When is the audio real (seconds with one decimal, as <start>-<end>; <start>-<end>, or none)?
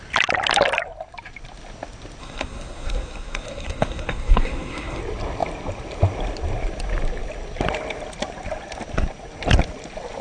0.0-2.2; 5.0-10.2